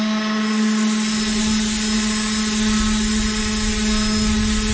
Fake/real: real